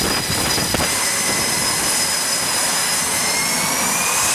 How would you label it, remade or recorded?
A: recorded